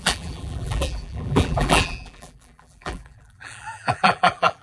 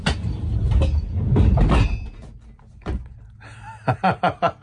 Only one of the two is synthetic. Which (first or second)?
first